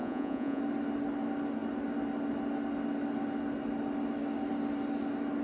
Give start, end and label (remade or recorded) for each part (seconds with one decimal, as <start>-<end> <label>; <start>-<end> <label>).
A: 0.0-0.6 remade; 0.6-5.4 recorded